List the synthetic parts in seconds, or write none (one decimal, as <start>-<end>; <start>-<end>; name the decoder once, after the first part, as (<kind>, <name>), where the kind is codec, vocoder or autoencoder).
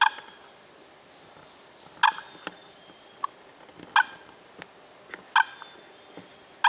none